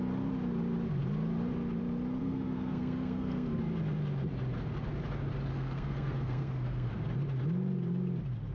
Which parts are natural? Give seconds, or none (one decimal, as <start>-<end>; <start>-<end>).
0.0-2.2; 3.6-5.5; 6.9-8.5